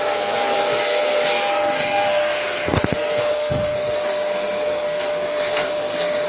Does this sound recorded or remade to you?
remade